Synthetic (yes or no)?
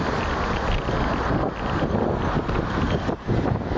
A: no